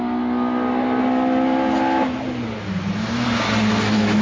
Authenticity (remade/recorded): recorded